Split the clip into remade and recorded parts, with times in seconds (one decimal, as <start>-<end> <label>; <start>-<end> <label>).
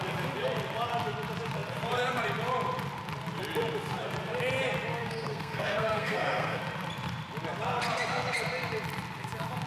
0.0-4.9 recorded; 4.9-6.6 remade; 6.6-9.7 recorded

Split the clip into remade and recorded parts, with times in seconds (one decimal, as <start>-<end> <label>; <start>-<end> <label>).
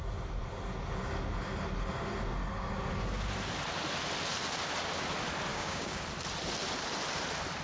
0.0-5.5 recorded; 5.5-6.0 remade; 6.0-7.6 recorded